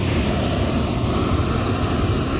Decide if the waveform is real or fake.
fake